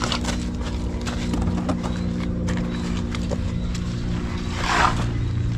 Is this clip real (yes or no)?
yes